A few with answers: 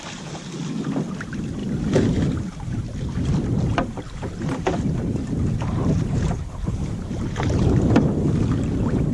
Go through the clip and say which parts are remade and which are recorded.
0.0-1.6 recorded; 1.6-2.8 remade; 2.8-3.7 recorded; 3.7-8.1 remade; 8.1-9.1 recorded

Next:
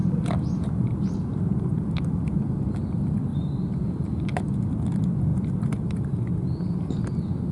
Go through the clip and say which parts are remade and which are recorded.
0.0-2.4 remade; 2.4-3.3 recorded; 3.3-4.7 remade; 4.7-5.3 recorded; 5.3-6.2 remade; 6.2-7.5 recorded